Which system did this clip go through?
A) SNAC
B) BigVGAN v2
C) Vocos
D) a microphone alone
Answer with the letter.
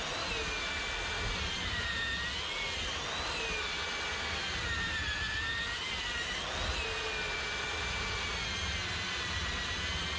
D